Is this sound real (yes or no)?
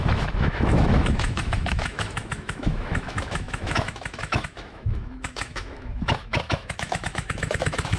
no